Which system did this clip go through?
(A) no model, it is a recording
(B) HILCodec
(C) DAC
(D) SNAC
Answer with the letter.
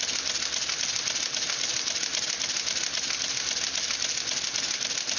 A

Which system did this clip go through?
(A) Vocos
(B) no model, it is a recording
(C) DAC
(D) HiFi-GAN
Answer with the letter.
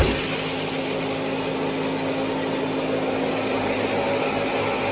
B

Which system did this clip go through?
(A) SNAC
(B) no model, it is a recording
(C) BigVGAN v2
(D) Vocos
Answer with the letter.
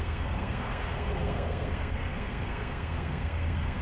A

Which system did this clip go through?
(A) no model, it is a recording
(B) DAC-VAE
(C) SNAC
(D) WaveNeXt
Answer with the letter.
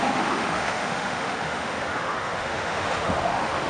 B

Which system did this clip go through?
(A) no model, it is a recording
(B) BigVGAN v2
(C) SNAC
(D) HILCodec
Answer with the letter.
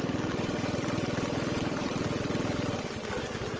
A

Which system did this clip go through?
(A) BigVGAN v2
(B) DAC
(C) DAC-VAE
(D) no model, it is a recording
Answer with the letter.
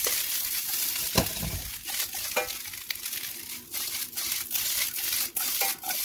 D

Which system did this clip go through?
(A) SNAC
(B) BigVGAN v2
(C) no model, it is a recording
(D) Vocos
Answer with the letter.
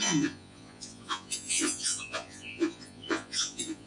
D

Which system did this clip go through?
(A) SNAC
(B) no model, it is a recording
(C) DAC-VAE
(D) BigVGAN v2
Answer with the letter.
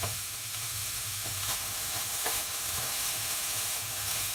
C